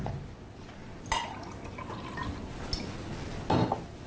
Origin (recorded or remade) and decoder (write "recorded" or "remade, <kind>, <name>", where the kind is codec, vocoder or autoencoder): recorded